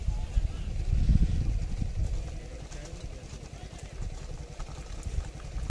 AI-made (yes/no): no